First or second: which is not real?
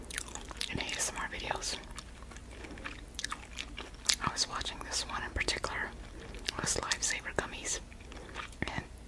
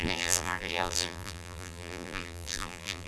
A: second